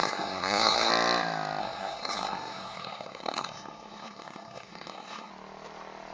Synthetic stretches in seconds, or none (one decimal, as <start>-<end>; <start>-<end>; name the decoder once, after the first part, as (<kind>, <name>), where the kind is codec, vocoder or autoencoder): 0.0-0.9 (codec, SNAC); 1.6-5.3